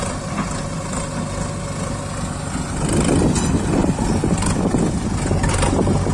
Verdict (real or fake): real